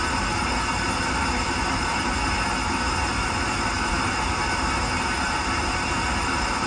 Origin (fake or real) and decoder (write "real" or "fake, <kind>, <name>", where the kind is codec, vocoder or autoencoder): fake, vocoder, BigVGAN v2